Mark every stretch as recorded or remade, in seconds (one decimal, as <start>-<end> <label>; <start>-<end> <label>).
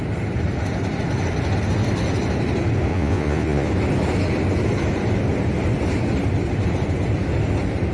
0.0-2.9 recorded; 2.9-3.7 remade; 3.7-7.9 recorded